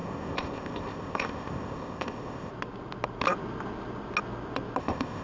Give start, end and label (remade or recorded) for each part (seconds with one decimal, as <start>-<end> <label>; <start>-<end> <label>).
0.0-2.5 remade; 2.5-4.8 recorded; 4.8-5.2 remade